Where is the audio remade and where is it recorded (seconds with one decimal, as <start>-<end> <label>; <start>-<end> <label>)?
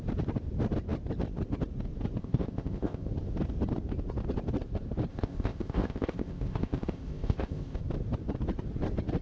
0.0-2.2 recorded; 2.2-3.1 remade; 3.1-5.1 recorded; 5.1-7.8 remade; 7.8-9.2 recorded